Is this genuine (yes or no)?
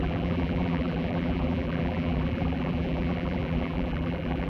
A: no